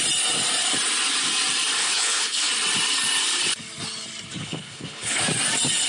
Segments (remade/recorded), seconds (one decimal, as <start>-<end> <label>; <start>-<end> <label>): 0.0-1.8 recorded; 1.8-2.5 remade; 2.5-4.4 recorded; 4.4-5.2 remade; 5.2-5.9 recorded